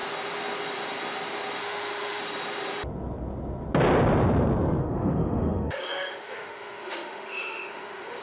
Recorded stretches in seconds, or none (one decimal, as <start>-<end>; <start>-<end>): 0.0-1.6; 2.2-4.8